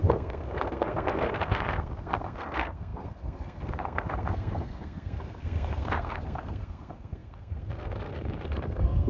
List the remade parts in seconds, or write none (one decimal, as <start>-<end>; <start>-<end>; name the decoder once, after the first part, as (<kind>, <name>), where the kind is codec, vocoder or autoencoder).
0.0-9.1 (codec, SNAC)